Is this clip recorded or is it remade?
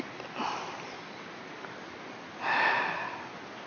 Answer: recorded